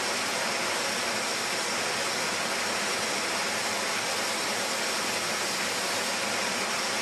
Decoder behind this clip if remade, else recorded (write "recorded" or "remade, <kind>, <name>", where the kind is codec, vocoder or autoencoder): recorded